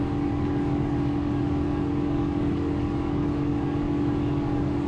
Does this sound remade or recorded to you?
remade